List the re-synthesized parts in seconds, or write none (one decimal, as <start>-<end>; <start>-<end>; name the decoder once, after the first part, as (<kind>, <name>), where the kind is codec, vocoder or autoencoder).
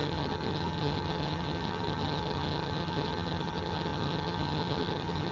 0.0-5.3 (vocoder, HiFi-GAN)